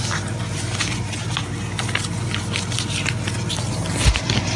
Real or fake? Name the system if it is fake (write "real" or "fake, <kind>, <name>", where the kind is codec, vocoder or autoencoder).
real